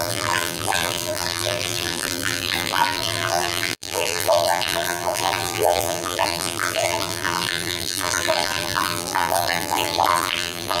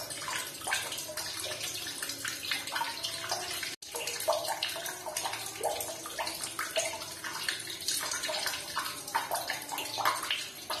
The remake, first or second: first